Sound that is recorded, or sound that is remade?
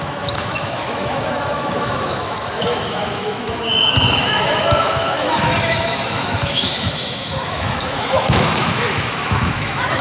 remade